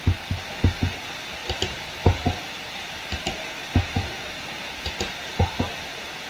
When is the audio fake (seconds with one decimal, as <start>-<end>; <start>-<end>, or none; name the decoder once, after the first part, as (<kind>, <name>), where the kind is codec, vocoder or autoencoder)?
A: 1.4-2.0 (vocoder, BigVGAN v2); 3.6-5.5

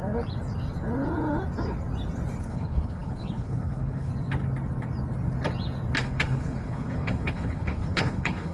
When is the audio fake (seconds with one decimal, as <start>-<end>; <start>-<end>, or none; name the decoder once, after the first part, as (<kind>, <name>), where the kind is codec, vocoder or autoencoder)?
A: 2.4-4.1 (codec, HILCodec); 6.0-8.5

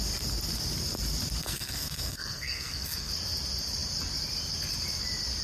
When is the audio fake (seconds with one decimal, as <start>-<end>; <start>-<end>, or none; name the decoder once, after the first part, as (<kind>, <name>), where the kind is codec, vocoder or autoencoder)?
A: 1.4-3.1 (codec, SNAC)

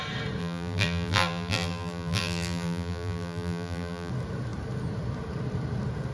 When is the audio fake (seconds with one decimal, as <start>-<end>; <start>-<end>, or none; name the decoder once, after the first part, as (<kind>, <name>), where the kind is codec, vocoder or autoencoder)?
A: 0.4-4.1 (vocoder, BigVGAN v2)

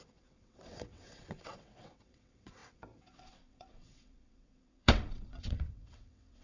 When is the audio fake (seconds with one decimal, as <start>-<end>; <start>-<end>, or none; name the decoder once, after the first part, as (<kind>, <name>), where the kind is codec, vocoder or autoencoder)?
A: 0.0-6.4 (vocoder, WaveNeXt)

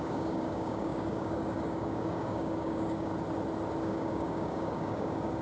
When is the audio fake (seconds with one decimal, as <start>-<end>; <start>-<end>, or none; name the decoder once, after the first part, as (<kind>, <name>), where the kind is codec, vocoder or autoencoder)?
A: 0.0-3.1 (codec, DAC); 3.8-5.4

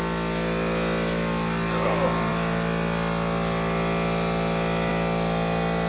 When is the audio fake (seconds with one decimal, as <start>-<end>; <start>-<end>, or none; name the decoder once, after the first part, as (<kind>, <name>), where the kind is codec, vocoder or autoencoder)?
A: none

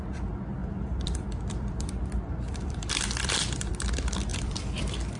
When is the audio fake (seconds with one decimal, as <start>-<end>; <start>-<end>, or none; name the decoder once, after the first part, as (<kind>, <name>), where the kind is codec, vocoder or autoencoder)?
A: 0.6-3.7 (vocoder, BigVGAN v2); 4.3-4.8